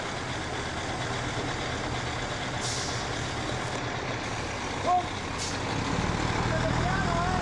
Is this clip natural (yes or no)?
yes